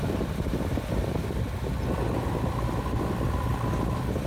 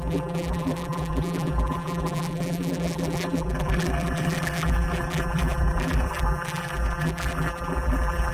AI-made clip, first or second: second